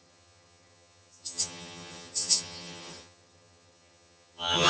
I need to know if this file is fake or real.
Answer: fake